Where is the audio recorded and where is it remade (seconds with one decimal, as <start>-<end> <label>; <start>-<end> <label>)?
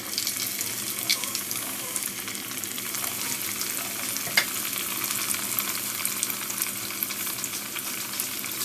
0.0-1.1 recorded; 1.1-2.1 remade; 2.1-8.6 recorded